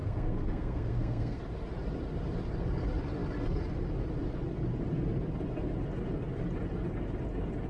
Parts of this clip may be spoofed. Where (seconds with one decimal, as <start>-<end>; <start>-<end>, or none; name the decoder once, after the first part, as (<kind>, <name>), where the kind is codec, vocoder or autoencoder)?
0.0-1.4 (codec, SNAC)